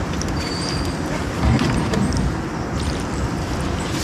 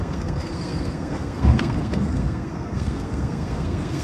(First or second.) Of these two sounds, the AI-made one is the second